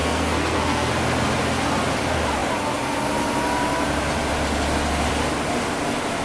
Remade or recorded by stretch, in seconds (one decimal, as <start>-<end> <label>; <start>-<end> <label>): 0.0-0.9 remade; 0.9-6.2 recorded